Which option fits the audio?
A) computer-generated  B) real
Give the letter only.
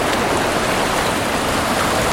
B